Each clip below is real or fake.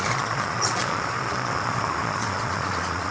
fake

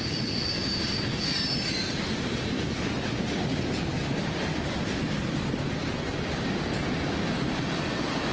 real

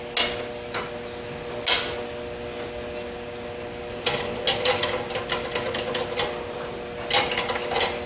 real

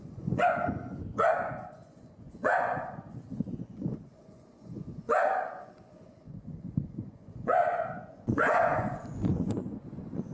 fake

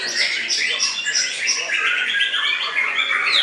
fake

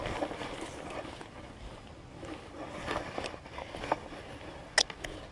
real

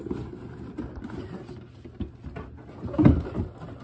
real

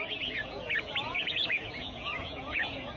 fake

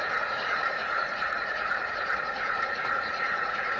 fake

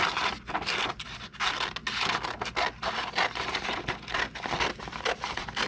real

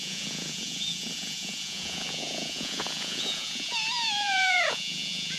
fake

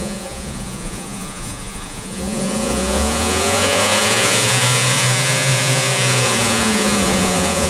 fake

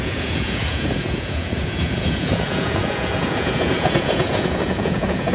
fake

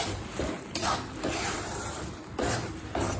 real